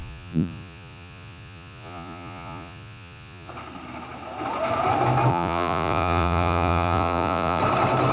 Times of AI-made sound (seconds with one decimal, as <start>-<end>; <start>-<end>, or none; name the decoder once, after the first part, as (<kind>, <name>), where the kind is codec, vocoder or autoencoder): 0.0-3.5 (vocoder, Vocos); 5.3-7.6